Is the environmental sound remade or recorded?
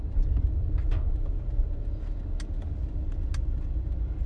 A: recorded